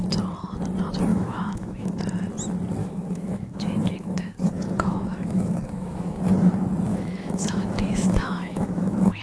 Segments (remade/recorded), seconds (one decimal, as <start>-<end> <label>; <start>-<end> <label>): 0.0-1.1 recorded; 1.1-2.0 remade; 2.0-2.8 recorded; 2.8-6.2 remade; 6.2-6.9 recorded; 6.9-9.2 remade